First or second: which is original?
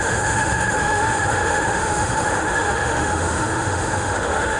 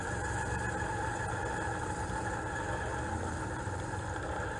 second